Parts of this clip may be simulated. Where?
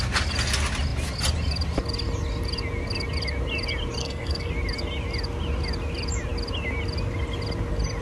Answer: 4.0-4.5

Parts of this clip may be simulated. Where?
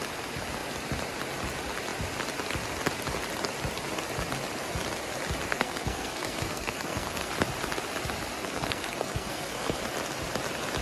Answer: 5.5-7.3; 8.4-9.8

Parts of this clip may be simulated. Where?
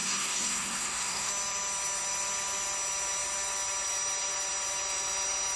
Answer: 0.0-1.3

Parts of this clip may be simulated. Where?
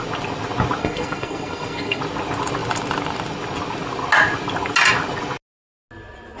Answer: 0.8-2.0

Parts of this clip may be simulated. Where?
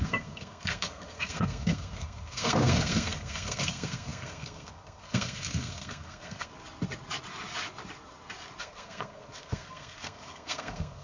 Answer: 0.0-6.5; 8.6-11.0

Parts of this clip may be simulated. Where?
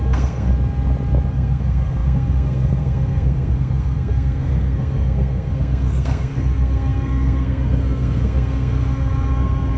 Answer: 0.0-0.5; 1.3-9.8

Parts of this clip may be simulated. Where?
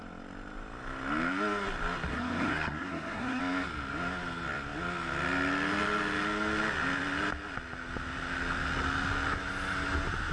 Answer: 2.1-3.4